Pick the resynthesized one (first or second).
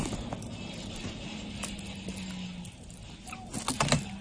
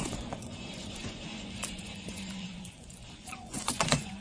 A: second